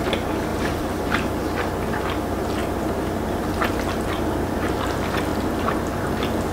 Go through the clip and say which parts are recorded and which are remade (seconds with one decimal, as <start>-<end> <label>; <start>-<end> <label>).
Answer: 0.0-0.5 recorded; 0.5-1.5 remade; 1.5-6.5 recorded